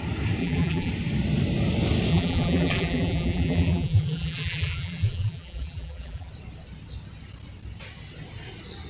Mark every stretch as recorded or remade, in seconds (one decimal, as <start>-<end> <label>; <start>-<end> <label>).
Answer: 0.0-0.4 recorded; 0.4-0.9 remade; 0.9-2.1 recorded; 2.1-6.3 remade; 6.3-8.9 recorded